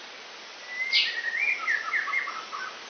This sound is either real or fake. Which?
real